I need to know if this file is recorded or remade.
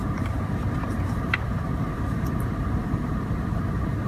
remade